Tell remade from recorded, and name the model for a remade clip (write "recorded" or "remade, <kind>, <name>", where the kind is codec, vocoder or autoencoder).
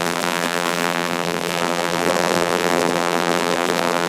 remade, vocoder, BigVGAN v2